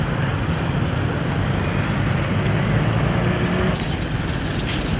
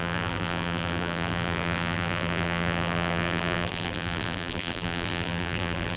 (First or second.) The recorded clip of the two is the first